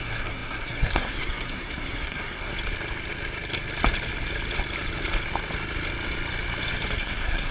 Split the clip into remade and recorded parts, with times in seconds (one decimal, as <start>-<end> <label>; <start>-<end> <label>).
0.0-2.5 remade; 2.5-7.0 recorded; 7.0-7.5 remade